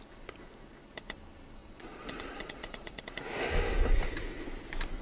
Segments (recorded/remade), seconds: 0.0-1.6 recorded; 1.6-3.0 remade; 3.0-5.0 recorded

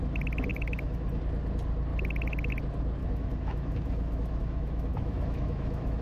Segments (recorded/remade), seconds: 0.0-0.5 recorded; 0.5-1.2 remade; 1.2-3.0 recorded; 3.0-6.0 remade

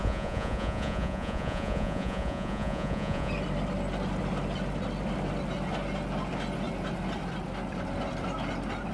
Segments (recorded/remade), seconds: 0.0-3.3 remade; 3.3-8.9 recorded